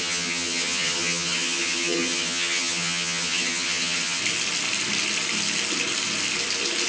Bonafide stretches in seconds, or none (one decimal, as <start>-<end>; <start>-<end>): 4.2-6.9